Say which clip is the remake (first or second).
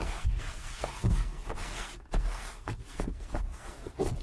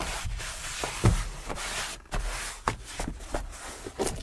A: first